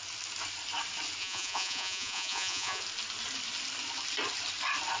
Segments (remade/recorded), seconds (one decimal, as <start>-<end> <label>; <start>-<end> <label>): 0.0-1.2 recorded; 1.2-2.8 remade; 2.8-5.0 recorded